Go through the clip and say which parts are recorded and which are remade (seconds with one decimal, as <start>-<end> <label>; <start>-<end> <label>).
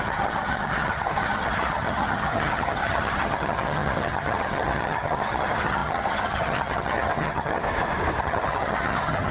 0.0-7.6 remade; 7.6-8.2 recorded; 8.2-9.3 remade